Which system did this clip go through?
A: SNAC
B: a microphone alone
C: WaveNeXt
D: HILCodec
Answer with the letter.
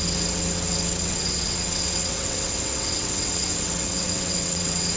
C